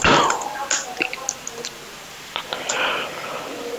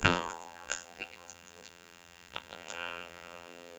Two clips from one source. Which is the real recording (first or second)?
first